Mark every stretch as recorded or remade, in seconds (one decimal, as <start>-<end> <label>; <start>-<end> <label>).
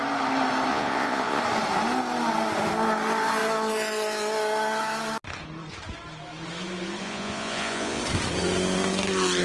0.0-0.7 recorded; 0.7-1.4 remade; 1.4-7.0 recorded; 7.0-8.0 remade; 8.0-9.4 recorded